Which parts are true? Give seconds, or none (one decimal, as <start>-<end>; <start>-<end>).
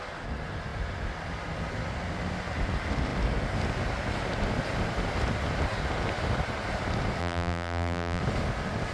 0.0-7.2; 8.2-8.9